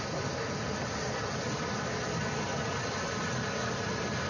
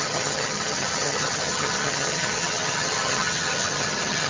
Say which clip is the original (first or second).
first